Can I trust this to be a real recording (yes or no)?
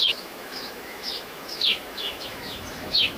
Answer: no